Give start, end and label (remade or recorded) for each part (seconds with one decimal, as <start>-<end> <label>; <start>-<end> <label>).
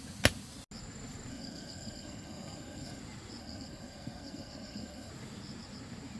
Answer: 0.0-1.3 recorded; 1.3-3.0 remade; 3.0-3.4 recorded; 3.4-5.1 remade; 5.1-6.2 recorded